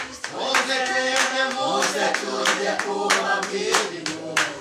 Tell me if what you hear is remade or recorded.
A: remade